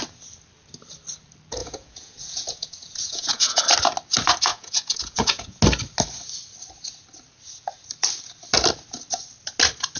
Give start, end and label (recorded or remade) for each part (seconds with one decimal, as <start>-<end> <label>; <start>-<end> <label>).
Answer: 0.0-1.6 recorded; 1.6-3.6 remade; 3.6-4.5 recorded; 4.5-5.6 remade; 5.6-10.0 recorded